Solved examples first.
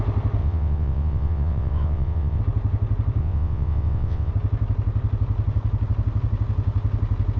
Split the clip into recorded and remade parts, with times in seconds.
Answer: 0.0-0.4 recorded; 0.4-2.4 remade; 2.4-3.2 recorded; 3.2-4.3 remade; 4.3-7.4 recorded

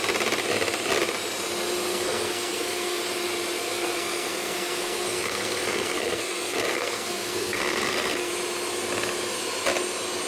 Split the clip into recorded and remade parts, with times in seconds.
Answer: 0.0-1.9 recorded; 1.9-3.0 remade; 3.0-3.6 recorded; 3.6-8.3 remade; 8.3-10.3 recorded